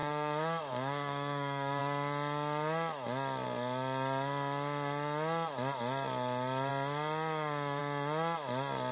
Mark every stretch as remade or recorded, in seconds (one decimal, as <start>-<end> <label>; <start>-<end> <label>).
0.0-1.8 remade; 1.8-8.9 recorded

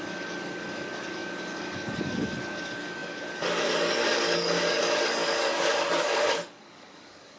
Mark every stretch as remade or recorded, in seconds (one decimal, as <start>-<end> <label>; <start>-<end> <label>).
0.0-7.4 remade

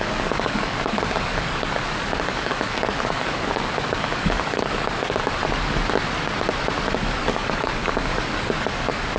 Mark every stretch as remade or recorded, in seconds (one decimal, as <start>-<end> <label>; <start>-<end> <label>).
0.0-5.4 remade; 5.4-6.9 recorded; 6.9-9.2 remade

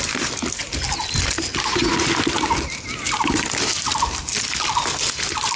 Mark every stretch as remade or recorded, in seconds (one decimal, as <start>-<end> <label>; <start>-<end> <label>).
0.0-5.6 recorded

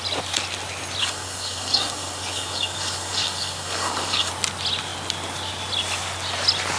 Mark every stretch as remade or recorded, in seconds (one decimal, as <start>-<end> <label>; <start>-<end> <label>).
0.0-1.0 recorded; 1.0-4.3 remade; 4.3-6.8 recorded

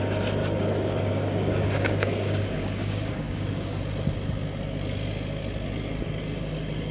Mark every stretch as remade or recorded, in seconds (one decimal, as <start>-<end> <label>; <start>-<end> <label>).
0.0-0.4 recorded; 0.4-3.8 remade; 3.8-6.9 recorded

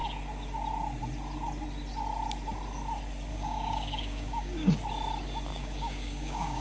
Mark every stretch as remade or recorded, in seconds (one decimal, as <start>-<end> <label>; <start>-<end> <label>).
0.0-3.3 recorded; 3.3-4.7 remade; 4.7-5.5 recorded; 5.5-6.6 remade

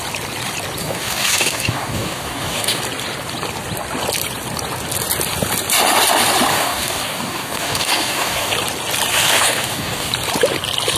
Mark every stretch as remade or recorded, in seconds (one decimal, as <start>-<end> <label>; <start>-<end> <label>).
0.0-0.8 recorded; 0.8-2.8 remade; 2.8-6.5 recorded; 6.5-8.5 remade; 8.5-9.1 recorded; 9.1-10.1 remade; 10.1-11.0 recorded